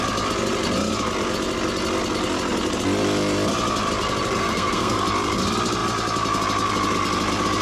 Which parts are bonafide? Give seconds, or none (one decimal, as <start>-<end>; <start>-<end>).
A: 0.0-4.4; 5.0-7.6